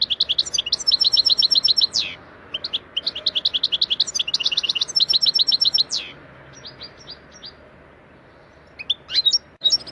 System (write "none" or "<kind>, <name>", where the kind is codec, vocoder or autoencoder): none